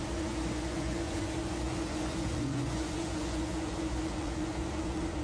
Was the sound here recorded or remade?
remade